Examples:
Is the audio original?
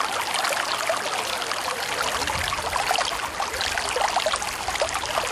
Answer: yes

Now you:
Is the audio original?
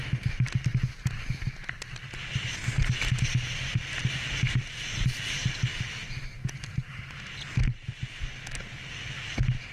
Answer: yes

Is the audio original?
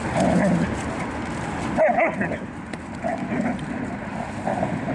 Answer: yes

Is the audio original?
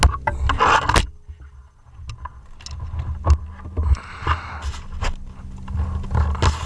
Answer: yes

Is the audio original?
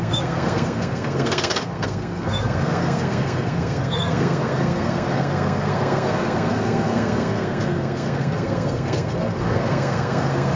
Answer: no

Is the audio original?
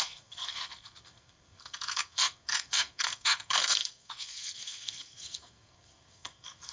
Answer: no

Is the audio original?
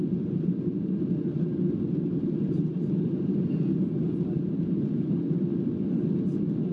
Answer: yes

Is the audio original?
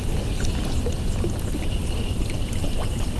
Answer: yes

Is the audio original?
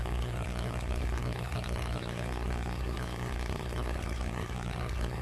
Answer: no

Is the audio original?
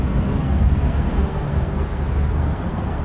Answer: no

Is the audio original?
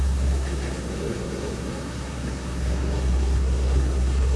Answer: no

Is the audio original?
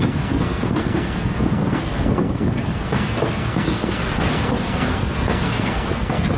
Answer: no